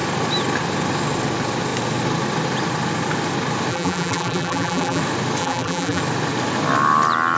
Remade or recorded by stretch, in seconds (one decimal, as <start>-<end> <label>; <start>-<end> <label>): 0.0-3.7 recorded; 3.7-5.0 remade; 5.0-5.4 recorded; 5.4-6.0 remade; 6.0-7.4 recorded

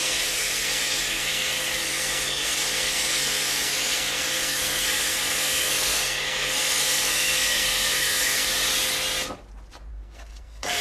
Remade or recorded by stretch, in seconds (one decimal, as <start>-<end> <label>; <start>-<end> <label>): 0.0-8.5 remade; 8.5-9.9 recorded; 9.9-10.8 remade

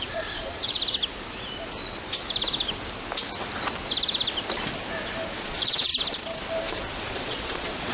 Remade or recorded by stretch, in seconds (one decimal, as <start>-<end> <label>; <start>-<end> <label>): 0.0-0.8 remade; 0.8-5.4 recorded; 5.4-5.9 remade; 5.9-6.7 recorded; 6.7-7.9 remade

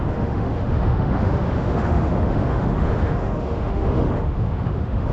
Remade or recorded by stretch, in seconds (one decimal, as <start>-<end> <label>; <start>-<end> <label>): 0.0-5.1 remade

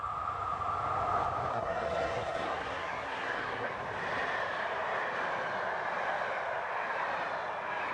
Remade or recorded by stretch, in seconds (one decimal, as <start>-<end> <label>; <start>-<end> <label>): 0.0-1.5 recorded; 1.5-3.7 remade; 3.7-7.9 recorded

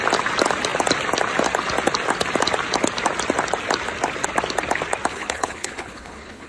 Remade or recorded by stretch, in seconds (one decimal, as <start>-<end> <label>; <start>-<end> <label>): 0.0-5.1 recorded; 5.1-6.5 remade